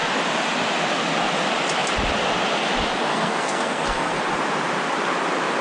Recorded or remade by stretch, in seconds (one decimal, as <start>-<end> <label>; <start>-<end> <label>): 0.0-3.1 recorded; 3.1-4.2 remade; 4.2-5.6 recorded